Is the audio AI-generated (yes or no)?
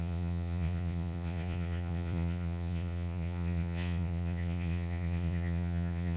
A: yes